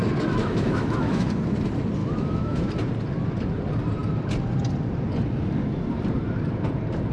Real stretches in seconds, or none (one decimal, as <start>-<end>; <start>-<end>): 0.0-0.4; 1.3-2.0; 2.7-7.1